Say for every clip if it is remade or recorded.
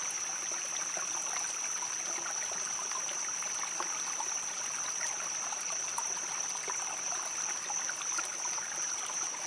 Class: recorded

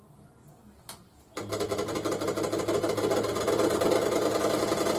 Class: recorded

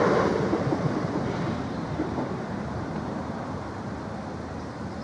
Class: recorded